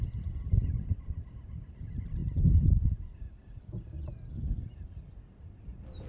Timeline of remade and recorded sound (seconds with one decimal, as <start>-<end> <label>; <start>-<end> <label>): 0.0-6.1 recorded